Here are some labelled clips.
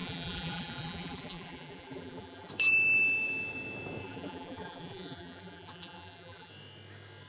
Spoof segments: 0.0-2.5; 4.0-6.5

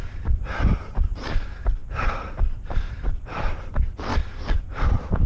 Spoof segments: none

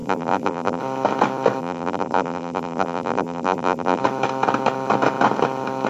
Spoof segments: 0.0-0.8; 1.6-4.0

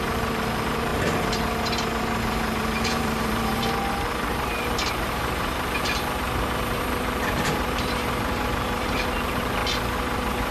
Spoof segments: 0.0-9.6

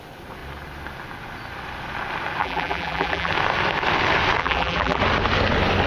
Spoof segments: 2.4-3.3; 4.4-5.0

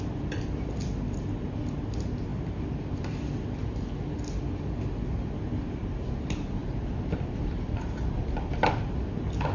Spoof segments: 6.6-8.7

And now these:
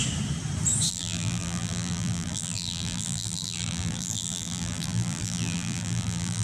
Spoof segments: 0.9-6.4